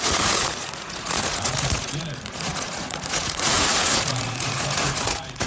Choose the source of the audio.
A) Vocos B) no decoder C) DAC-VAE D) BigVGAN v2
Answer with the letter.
A